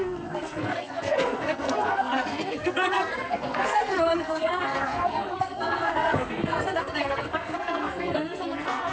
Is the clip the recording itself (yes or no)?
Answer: no